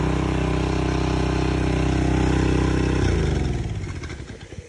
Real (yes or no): yes